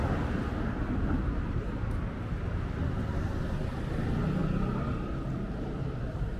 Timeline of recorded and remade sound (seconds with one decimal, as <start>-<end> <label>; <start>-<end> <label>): 0.0-6.4 recorded